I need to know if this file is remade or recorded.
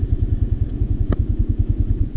remade